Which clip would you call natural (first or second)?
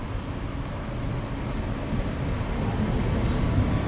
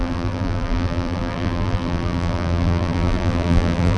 first